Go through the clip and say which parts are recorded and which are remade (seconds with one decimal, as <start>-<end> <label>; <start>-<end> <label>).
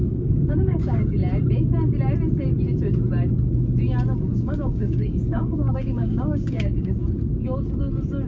0.0-1.2 remade; 1.2-4.2 recorded; 4.2-7.0 remade; 7.0-8.3 recorded